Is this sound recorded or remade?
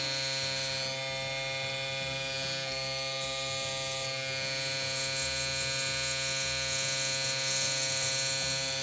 recorded